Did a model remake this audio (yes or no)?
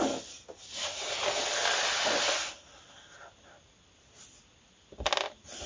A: no